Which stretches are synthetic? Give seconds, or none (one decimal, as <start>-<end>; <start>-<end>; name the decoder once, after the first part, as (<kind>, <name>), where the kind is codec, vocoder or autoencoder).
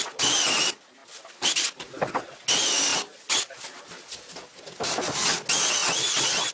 none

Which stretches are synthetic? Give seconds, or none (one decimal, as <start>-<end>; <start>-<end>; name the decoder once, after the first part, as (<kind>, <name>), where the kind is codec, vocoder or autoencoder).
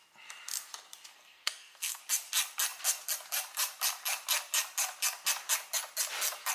1.1-2.0 (codec, SNAC)